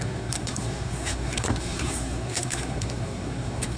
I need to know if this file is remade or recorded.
remade